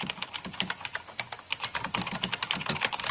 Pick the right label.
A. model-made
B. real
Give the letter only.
B